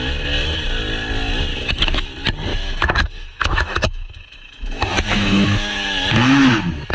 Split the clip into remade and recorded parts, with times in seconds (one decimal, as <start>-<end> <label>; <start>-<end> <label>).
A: 0.0-1.5 recorded; 1.5-2.1 remade; 2.1-2.5 recorded; 2.5-6.5 remade; 6.5-6.9 recorded